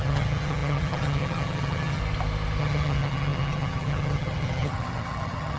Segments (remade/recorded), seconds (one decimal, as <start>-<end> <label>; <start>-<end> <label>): 0.0-2.0 remade; 2.0-2.6 recorded; 2.6-5.6 remade

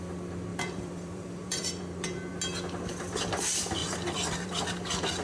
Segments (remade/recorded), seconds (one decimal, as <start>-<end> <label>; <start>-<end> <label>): 0.0-0.5 recorded; 0.5-1.9 remade; 1.9-3.8 recorded; 3.8-4.6 remade; 4.6-5.2 recorded

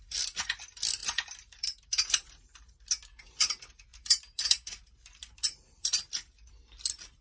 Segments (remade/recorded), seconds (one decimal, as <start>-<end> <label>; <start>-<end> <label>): 0.0-1.0 recorded; 1.0-2.8 remade; 2.8-3.9 recorded; 3.9-5.6 remade; 5.6-7.2 recorded

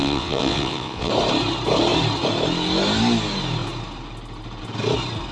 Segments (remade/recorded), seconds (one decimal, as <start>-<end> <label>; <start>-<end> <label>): 0.0-1.1 remade; 1.1-5.3 recorded

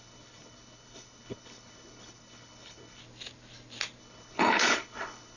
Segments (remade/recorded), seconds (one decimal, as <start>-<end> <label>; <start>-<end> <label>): 0.0-3.0 remade; 3.0-4.0 recorded; 4.0-5.4 remade

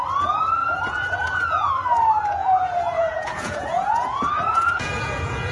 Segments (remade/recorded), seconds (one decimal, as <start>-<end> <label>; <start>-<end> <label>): 0.0-0.6 recorded; 0.6-1.7 remade; 1.7-2.4 recorded; 2.4-5.5 remade

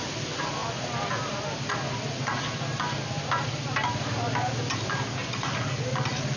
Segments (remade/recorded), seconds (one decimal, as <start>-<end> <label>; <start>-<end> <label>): 0.0-6.4 recorded

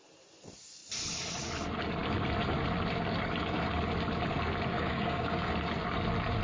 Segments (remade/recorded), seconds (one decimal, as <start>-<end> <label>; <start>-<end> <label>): 0.0-4.7 recorded; 4.7-5.5 remade; 5.5-6.4 recorded